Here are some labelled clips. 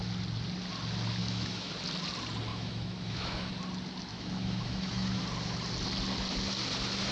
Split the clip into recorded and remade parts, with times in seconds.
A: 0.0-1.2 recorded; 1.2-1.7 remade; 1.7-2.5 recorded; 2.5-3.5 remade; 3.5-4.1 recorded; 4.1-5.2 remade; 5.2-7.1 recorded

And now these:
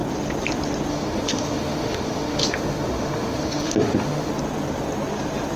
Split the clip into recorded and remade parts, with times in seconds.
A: 0.0-0.9 recorded; 0.9-4.3 remade; 4.3-5.6 recorded

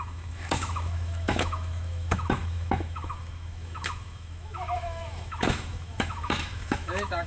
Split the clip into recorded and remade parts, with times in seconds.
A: 0.0-7.3 remade

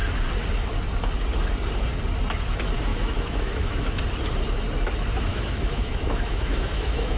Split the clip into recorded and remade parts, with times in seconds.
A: 0.0-2.9 recorded; 2.9-4.0 remade; 4.0-5.3 recorded; 5.3-7.2 remade

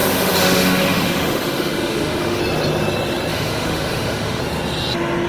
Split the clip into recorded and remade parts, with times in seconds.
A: 0.0-2.4 remade; 2.4-3.3 recorded; 3.3-4.4 remade; 4.4-5.3 recorded

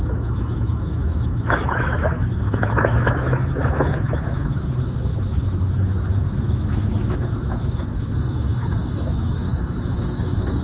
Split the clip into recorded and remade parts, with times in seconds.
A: 0.0-10.6 remade

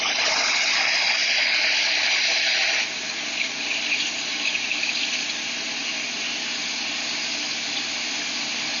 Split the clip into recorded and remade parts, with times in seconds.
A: 0.0-8.8 recorded

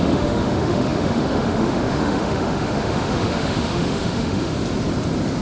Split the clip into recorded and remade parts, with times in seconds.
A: 0.0-4.5 remade; 4.5-5.4 recorded